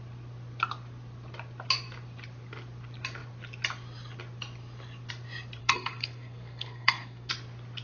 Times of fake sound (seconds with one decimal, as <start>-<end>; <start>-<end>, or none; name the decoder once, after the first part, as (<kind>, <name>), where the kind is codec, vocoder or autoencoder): 5.6-7.3 (codec, SNAC)